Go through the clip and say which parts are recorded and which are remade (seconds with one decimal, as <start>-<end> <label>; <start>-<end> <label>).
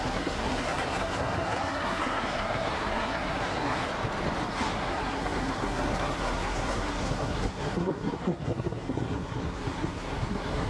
0.0-3.9 remade; 3.9-4.5 recorded; 4.5-10.7 remade